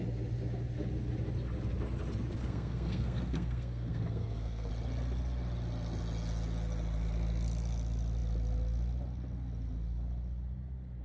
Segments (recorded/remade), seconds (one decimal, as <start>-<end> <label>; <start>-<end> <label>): 0.0-2.4 recorded; 2.4-4.7 remade; 4.7-11.0 recorded